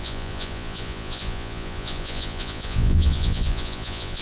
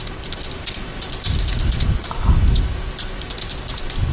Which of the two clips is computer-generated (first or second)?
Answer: first